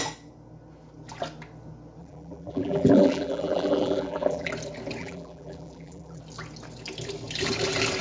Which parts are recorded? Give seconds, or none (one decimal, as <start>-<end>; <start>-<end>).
0.0-2.0; 4.5-5.0; 6.2-8.0

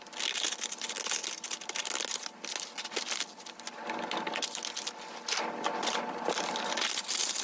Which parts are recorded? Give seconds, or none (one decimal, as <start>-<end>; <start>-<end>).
0.0-7.4

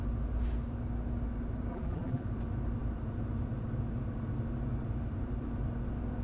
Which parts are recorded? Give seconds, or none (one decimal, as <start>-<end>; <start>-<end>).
0.0-1.7; 2.2-6.2

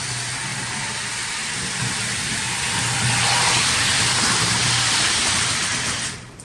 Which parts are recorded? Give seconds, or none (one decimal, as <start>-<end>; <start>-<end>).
0.0-3.9; 5.7-6.4

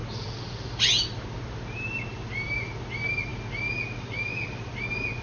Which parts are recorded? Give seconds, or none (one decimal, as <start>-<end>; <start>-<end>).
0.0-5.2

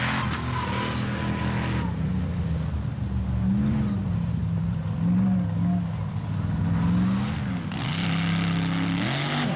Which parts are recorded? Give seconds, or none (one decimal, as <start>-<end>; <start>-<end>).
0.0-3.7; 4.8-9.6